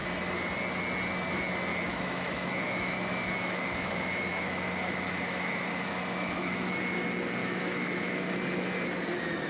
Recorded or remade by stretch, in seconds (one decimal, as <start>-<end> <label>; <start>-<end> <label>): 0.0-1.7 recorded; 1.7-6.8 remade; 6.8-7.4 recorded; 7.4-8.4 remade; 8.4-9.5 recorded